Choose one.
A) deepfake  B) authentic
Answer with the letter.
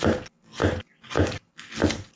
B